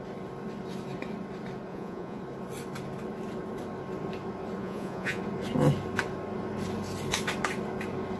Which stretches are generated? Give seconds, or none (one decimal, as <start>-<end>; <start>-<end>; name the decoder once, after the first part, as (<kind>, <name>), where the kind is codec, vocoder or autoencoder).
1.7-2.2 (vocoder, Vocos); 4.6-5.2

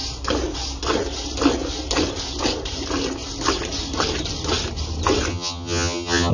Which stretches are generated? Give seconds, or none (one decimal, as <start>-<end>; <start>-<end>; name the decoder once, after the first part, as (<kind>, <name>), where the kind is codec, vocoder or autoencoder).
5.3-6.3 (vocoder, HiFi-GAN)

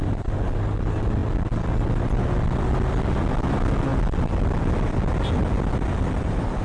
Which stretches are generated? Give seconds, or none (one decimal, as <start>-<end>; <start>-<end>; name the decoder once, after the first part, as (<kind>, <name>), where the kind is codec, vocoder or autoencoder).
none

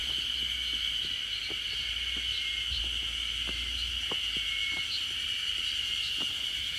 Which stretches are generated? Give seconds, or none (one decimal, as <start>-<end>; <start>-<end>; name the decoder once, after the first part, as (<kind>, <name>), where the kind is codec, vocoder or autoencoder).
none

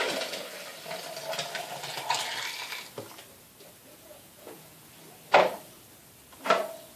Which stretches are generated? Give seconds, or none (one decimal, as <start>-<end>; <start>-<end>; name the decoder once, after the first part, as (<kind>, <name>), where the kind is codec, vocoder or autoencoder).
3.8-4.9 (vocoder, Vocos)

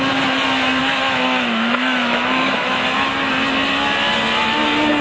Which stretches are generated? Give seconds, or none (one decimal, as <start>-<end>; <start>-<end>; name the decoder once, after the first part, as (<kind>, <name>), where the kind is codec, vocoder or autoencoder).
0.8-3.1 (autoencoder, DAC-VAE)

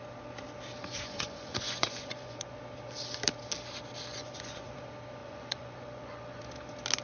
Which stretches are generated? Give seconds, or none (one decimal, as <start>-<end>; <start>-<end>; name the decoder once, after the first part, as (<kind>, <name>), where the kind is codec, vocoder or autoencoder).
0.9-2.6 (vocoder, Vocos); 4.1-4.8; 5.2-6.4